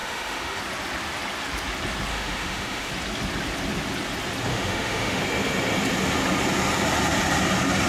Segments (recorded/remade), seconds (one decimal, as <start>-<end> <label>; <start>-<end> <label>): 0.0-0.6 remade; 0.6-2.1 recorded; 2.1-2.9 remade; 2.9-4.5 recorded; 4.5-5.2 remade; 5.2-7.9 recorded